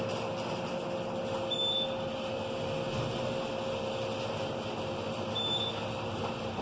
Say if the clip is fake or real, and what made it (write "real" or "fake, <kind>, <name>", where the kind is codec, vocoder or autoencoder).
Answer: real